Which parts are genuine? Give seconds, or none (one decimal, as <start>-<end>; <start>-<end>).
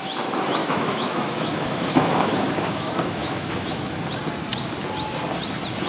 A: 0.0-0.6; 4.0-5.9